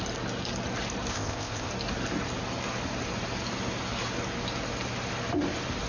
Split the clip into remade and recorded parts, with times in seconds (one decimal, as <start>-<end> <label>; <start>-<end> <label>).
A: 0.0-1.1 recorded; 1.1-1.7 remade; 1.7-5.9 recorded